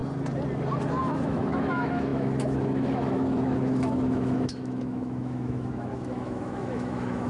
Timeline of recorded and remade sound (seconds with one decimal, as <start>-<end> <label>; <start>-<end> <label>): 0.0-1.0 recorded; 1.0-7.3 remade